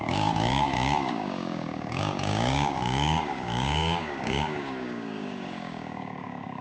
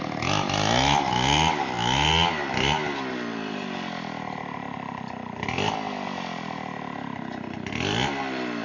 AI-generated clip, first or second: first